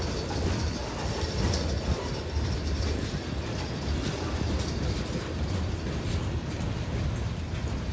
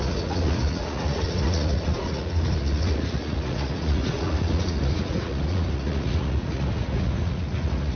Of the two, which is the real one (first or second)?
first